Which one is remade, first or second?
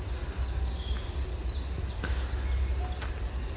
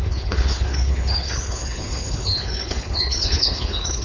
second